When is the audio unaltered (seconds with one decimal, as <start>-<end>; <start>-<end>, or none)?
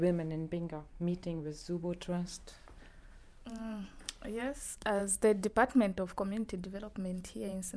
none